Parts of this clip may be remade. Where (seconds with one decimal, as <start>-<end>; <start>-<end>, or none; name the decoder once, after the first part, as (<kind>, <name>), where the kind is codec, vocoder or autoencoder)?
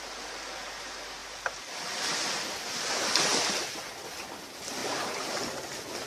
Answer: 1.2-2.9 (vocoder, BigVGAN v2)